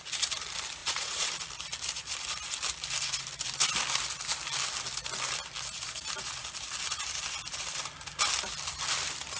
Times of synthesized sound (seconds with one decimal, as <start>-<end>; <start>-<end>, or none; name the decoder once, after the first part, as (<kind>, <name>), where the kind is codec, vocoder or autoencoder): 0.8-1.3 (vocoder, Vocos)